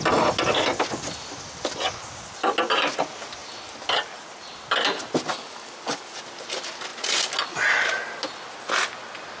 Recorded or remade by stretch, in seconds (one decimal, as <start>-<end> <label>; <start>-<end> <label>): 0.0-5.3 recorded; 5.3-6.2 remade; 6.2-9.4 recorded